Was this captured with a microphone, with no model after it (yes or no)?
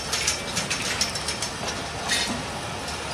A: yes